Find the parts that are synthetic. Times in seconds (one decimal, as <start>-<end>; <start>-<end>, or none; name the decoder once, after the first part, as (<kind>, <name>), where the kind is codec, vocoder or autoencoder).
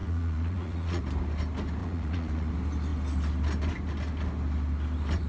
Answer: 0.0-1.0 (vocoder, Vocos); 1.8-2.5